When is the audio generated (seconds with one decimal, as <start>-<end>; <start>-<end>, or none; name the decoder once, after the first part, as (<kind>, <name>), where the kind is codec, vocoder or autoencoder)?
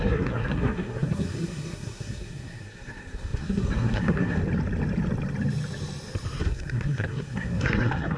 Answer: 0.0-4.4 (codec, SNAC); 6.4-8.2